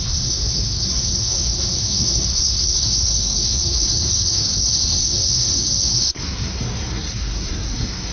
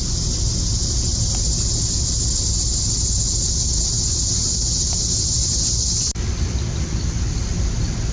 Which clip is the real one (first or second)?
second